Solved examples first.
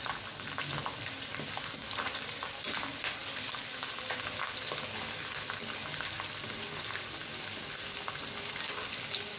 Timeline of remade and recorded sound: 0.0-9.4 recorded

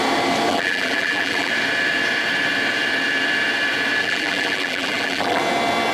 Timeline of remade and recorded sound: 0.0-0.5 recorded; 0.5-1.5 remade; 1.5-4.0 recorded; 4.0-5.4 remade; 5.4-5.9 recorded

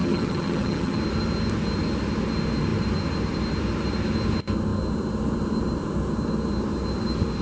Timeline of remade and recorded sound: 0.0-1.0 remade; 1.0-7.4 recorded

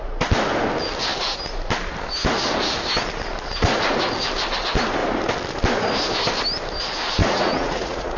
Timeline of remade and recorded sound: 0.0-7.2 recorded; 7.2-8.2 remade